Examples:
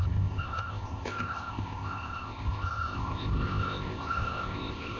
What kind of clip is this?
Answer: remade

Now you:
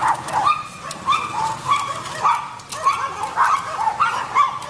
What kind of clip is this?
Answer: recorded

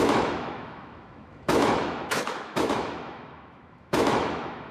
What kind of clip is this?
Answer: remade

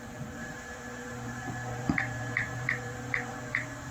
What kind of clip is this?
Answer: remade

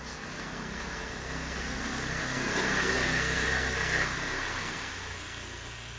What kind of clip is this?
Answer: remade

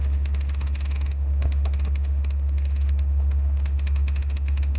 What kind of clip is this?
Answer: remade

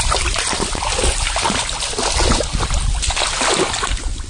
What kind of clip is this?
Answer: recorded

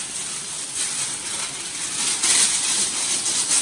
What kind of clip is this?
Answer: recorded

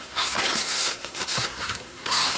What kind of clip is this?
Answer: remade